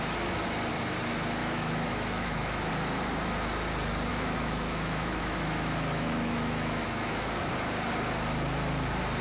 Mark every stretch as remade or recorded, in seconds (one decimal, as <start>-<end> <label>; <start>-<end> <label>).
0.0-1.4 recorded; 1.4-2.7 remade; 2.7-4.1 recorded; 4.1-7.5 remade; 7.5-9.2 recorded